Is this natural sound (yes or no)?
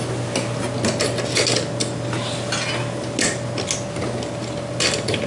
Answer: yes